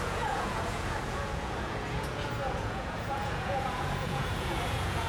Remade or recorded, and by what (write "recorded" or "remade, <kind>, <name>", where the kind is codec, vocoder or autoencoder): remade, vocoder, Vocos